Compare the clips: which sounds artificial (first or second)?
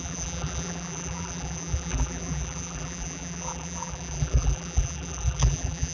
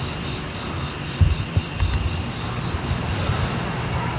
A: first